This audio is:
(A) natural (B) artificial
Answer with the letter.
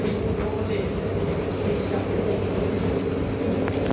A